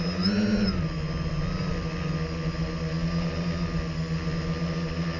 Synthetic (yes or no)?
no